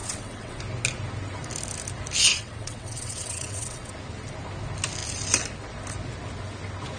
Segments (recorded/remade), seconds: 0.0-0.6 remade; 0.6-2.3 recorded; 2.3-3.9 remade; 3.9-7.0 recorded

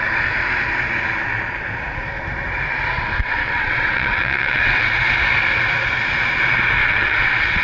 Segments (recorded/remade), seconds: 0.0-3.2 recorded; 3.2-4.9 remade; 4.9-6.8 recorded; 6.8-7.6 remade

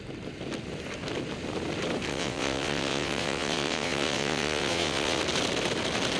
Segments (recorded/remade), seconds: 0.0-2.1 recorded; 2.1-5.2 remade; 5.2-6.2 recorded

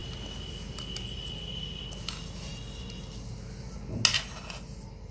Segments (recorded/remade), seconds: 0.0-5.1 recorded